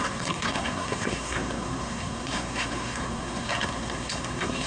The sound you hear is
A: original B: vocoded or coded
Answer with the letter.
B